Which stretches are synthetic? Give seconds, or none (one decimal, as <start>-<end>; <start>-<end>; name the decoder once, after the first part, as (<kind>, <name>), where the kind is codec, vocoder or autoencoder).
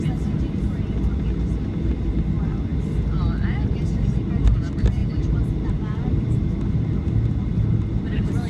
none